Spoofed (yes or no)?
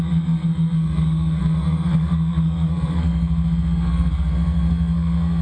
yes